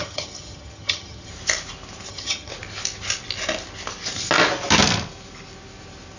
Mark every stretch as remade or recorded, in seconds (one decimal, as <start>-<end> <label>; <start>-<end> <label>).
0.0-1.3 remade; 1.3-2.1 recorded; 2.1-2.5 remade; 2.5-6.2 recorded